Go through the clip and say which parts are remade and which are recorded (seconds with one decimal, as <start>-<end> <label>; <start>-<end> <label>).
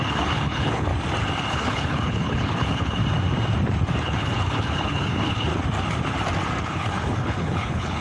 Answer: 0.0-0.9 remade; 0.9-1.5 recorded; 1.5-3.0 remade; 3.0-4.0 recorded; 4.0-5.5 remade; 5.5-6.6 recorded; 6.6-8.0 remade